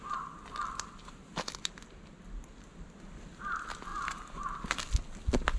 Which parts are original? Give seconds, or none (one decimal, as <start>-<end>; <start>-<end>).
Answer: 0.0-5.6